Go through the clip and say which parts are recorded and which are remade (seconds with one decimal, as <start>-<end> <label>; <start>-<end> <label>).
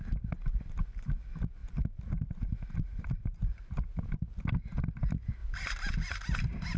0.0-1.1 remade; 1.1-1.6 recorded; 1.6-4.5 remade; 4.5-6.8 recorded